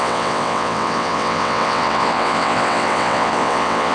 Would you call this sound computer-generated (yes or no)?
yes